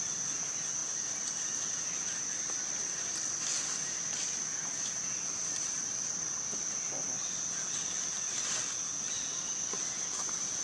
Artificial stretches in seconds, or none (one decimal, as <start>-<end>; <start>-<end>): none